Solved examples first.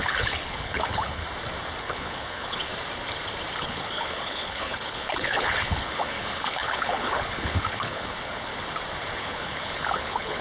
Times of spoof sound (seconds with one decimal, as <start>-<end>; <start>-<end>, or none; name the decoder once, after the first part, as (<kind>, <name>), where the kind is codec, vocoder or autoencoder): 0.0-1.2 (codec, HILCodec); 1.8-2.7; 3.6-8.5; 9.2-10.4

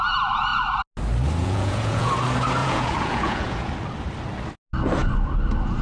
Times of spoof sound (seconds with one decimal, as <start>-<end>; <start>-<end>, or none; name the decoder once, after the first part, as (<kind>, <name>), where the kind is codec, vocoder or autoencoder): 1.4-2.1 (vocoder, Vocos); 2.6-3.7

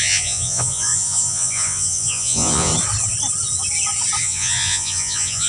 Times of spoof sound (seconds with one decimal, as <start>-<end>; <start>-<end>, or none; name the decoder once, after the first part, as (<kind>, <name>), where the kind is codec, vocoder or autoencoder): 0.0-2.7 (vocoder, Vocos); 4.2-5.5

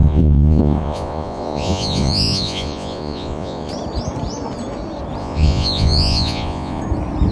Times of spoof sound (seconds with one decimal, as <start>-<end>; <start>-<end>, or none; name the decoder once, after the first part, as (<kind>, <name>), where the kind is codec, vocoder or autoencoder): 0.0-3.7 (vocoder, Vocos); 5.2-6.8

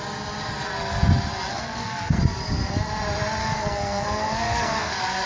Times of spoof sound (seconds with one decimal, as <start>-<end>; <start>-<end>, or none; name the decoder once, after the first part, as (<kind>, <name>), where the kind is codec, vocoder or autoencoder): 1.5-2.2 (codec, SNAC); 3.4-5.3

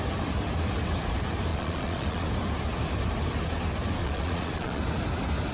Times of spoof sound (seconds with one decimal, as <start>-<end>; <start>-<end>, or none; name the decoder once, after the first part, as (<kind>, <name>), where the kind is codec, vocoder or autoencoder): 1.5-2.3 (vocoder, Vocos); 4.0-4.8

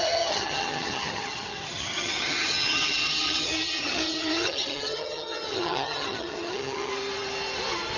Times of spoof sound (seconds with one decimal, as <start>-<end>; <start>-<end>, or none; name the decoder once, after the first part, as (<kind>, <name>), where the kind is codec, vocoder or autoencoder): 0.0-6.9 (vocoder, HiFi-GAN)